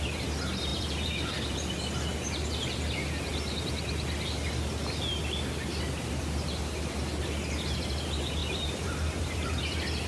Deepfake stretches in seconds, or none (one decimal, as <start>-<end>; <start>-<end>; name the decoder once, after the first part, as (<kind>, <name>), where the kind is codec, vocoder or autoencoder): 0.7-1.8 (vocoder, BigVGAN v2); 8.4-9.6